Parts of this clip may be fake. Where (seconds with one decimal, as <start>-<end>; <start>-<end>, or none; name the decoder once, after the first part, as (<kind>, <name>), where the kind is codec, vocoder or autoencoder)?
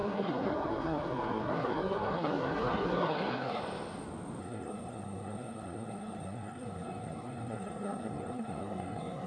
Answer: 0.0-3.6 (codec, SNAC); 4.4-9.3